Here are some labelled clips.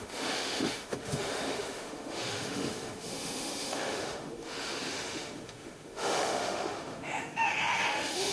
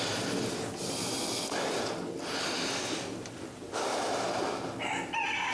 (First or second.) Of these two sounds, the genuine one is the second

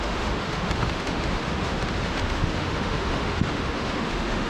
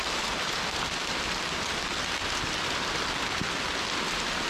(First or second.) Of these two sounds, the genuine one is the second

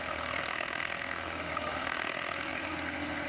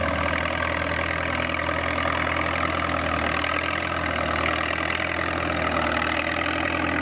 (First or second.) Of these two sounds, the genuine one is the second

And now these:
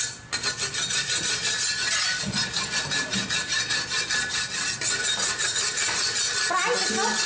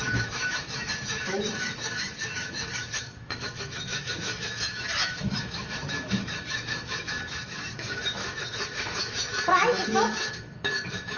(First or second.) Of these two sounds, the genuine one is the first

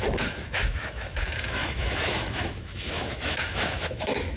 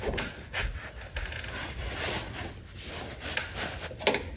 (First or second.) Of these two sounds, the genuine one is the second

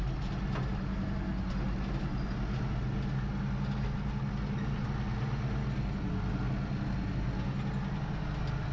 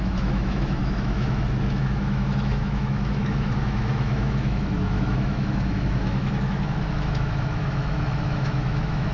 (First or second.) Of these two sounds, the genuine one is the first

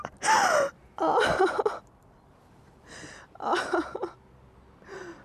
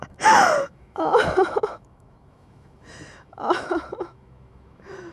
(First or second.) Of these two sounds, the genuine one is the first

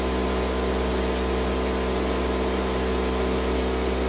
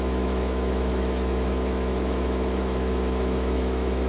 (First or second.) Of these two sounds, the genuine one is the first